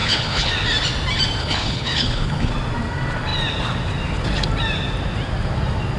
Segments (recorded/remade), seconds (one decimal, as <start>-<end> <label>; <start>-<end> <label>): 0.0-0.5 remade; 0.5-1.4 recorded; 1.4-2.5 remade; 2.5-6.0 recorded